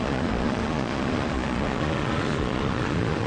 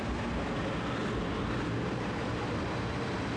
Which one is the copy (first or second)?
first